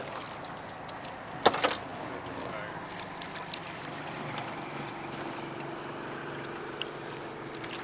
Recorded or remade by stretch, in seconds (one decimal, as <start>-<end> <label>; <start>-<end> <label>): 0.0-1.9 recorded; 1.9-6.6 remade; 6.6-7.8 recorded